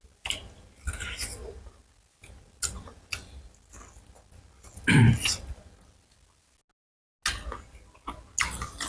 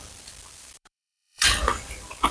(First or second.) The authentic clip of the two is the first